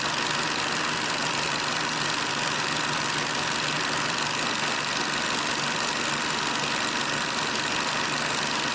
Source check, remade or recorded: recorded